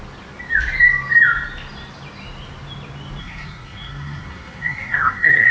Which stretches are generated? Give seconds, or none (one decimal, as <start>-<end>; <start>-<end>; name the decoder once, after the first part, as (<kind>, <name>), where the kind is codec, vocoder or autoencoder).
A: 3.2-5.5 (codec, SNAC)